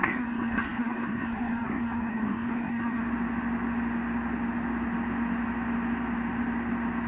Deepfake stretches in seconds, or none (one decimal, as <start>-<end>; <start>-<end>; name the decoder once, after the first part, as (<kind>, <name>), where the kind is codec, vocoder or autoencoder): 0.0-3.0 (codec, SNAC)